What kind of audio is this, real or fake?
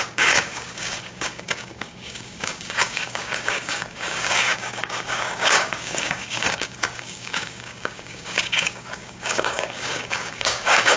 fake